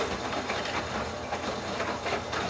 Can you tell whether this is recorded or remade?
recorded